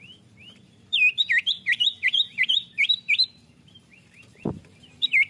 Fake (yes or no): yes